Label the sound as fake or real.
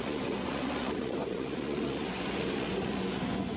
fake